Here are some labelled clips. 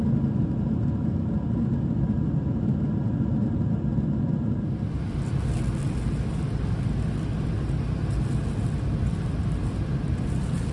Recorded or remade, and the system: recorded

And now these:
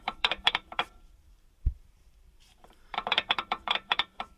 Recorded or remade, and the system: remade, vocoder, BigVGAN v2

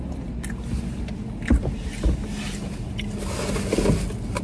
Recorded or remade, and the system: recorded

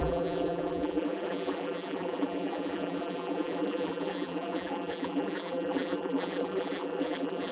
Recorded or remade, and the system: remade, vocoder, BigVGAN v2